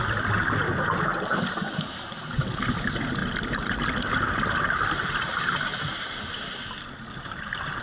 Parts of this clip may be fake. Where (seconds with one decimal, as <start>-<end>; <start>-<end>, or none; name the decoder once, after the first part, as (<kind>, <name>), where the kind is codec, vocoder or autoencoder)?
1.1-2.4 (vocoder, BigVGAN v2); 3.2-6.6